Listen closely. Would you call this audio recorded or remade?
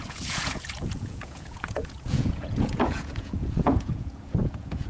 remade